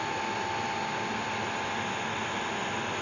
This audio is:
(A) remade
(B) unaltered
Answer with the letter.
B